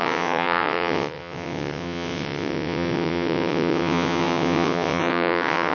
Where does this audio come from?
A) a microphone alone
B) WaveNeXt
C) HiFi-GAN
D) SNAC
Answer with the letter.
B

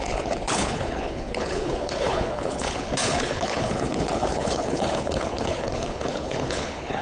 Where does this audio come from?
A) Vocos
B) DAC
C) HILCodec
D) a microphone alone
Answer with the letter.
C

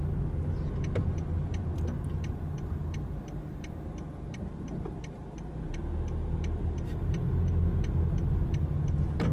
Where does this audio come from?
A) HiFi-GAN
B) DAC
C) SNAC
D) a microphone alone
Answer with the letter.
D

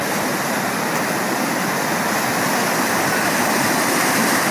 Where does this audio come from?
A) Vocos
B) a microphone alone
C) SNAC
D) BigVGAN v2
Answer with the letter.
B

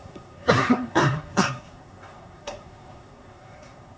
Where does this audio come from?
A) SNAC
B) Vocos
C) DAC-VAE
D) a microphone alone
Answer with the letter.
A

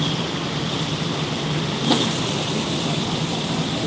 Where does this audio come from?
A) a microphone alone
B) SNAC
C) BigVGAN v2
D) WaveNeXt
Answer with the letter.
A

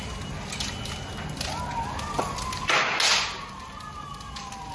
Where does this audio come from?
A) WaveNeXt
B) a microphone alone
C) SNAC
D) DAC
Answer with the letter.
B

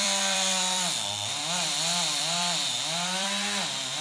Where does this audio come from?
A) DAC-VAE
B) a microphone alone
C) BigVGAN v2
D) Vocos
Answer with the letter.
C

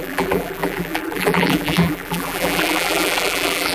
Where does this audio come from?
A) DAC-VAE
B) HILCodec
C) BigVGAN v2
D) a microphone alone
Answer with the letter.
C